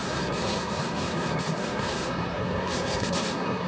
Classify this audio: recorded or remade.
remade